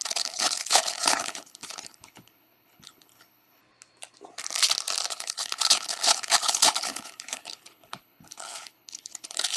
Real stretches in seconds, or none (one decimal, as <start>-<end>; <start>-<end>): 3.6-5.1